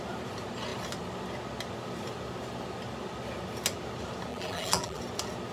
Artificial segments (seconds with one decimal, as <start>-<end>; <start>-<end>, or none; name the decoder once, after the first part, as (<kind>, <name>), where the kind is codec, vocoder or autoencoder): 4.3-5.0 (vocoder, BigVGAN v2)